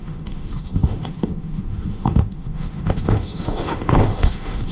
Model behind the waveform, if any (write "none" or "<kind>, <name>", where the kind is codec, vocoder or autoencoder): autoencoder, DAC-VAE